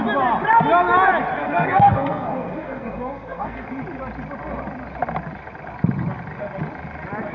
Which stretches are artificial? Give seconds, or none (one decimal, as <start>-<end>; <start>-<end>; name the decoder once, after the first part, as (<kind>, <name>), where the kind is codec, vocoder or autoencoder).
1.4-3.7 (codec, SNAC)